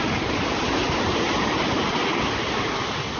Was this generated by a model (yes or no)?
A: no